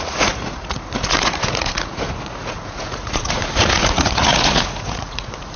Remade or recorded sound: remade